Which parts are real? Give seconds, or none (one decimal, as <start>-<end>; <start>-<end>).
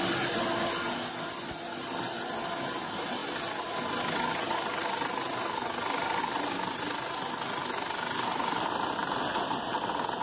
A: 0.0-10.2